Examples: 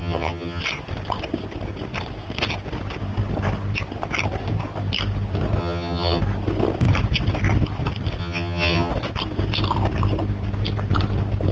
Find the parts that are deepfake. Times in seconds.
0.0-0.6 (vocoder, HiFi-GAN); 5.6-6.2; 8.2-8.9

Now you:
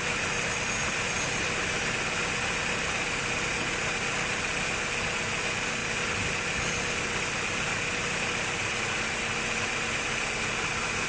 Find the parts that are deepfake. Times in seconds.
none

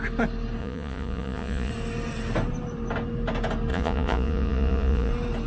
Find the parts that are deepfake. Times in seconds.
0.6-1.7 (vocoder, Vocos); 3.7-5.1

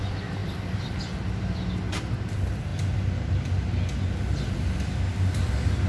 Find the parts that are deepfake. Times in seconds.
none

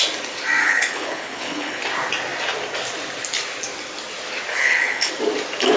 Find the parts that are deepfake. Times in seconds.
0.6-1.8 (codec, HILCodec); 4.5-5.1

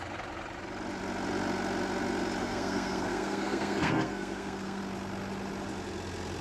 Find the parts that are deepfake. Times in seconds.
2.4-4.8 (codec, SNAC)

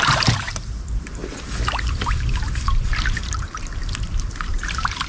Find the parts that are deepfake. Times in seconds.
0.0-1.2 (vocoder, BigVGAN v2); 2.5-2.9; 4.5-5.1